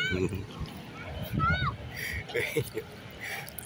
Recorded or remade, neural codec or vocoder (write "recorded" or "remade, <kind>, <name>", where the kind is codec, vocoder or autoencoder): recorded